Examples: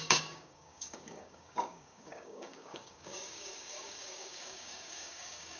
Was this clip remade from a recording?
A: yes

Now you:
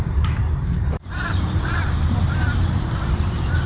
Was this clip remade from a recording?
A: yes